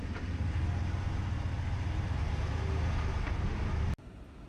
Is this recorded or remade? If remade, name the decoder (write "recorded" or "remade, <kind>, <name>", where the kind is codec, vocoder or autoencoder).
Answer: recorded